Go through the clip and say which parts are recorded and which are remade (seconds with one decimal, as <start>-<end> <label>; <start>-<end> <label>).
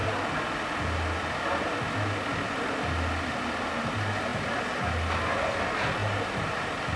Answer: 0.0-7.0 recorded